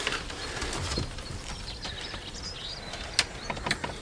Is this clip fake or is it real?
real